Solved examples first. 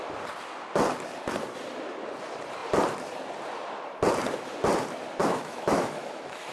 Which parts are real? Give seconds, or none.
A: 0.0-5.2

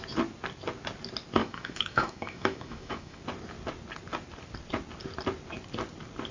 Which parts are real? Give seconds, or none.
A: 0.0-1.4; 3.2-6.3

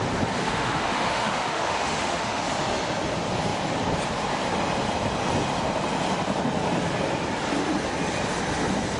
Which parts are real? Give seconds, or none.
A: 0.0-0.4; 2.4-9.0